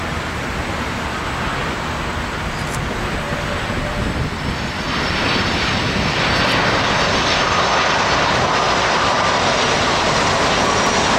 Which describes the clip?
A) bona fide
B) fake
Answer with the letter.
A